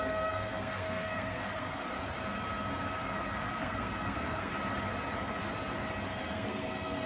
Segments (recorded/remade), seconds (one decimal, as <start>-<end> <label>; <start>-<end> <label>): 0.0-1.9 remade; 1.9-3.0 recorded; 3.0-4.5 remade; 4.5-6.1 recorded; 6.1-7.1 remade

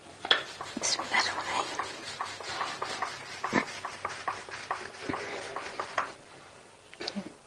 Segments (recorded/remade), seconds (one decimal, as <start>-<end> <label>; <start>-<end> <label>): 0.0-5.1 recorded; 5.1-6.1 remade; 6.1-7.5 recorded

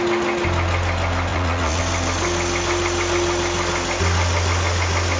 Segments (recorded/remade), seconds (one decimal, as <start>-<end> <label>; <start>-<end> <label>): 0.0-1.3 recorded; 1.3-1.8 remade; 1.8-5.2 recorded

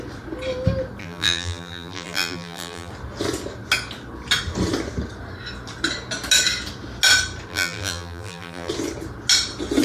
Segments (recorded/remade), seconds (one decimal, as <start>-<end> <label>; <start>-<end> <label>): 0.0-1.0 recorded; 1.0-2.9 remade; 2.9-7.5 recorded; 7.5-8.7 remade; 8.7-9.8 recorded

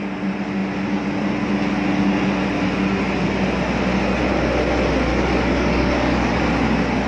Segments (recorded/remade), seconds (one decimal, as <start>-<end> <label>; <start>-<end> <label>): 0.0-5.1 recorded; 5.1-6.4 remade; 6.4-7.1 recorded

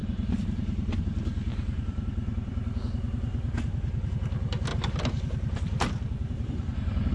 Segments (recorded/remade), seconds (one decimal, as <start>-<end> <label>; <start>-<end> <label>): 0.0-1.0 remade; 1.0-1.5 recorded; 1.5-2.8 remade; 2.8-3.3 recorded; 3.3-4.1 remade; 4.1-4.7 recorded; 4.7-7.1 remade